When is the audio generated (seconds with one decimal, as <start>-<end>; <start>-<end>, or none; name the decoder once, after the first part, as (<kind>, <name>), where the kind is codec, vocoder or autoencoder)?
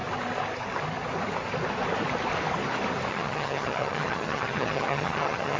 3.1-5.6 (vocoder, HiFi-GAN)